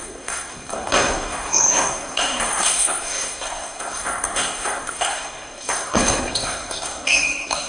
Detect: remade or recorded remade